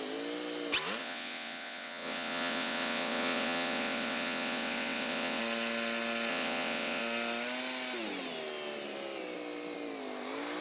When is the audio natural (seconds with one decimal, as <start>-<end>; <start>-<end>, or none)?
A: 0.0-1.0; 5.4-6.3; 7.0-10.6